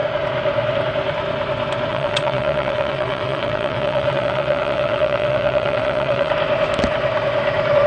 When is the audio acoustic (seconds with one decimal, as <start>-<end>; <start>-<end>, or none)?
0.0-1.9; 6.3-7.9

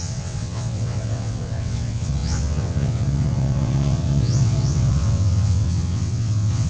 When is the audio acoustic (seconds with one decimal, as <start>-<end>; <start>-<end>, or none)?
none

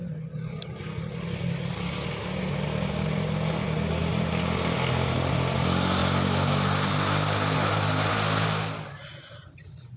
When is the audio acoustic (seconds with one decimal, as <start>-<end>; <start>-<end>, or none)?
0.0-10.0

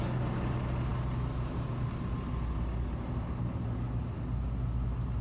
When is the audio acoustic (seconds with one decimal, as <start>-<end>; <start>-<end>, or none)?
0.0-5.2

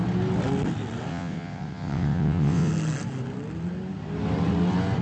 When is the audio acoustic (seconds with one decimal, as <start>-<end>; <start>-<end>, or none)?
0.0-1.1; 2.7-5.0

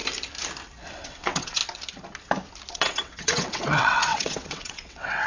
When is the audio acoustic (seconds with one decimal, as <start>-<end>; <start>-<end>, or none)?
0.0-0.9; 1.6-2.7

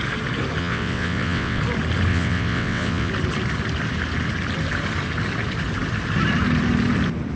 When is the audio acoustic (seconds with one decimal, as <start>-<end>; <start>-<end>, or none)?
0.0-0.6; 1.6-2.1; 3.1-7.4

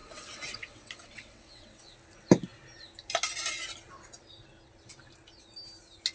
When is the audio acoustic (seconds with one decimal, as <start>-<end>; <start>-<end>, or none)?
1.8-6.1